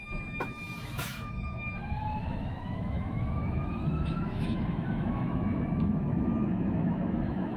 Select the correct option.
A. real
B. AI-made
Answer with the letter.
B